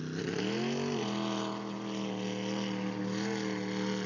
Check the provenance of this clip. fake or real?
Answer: real